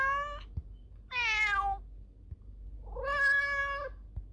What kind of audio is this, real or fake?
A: real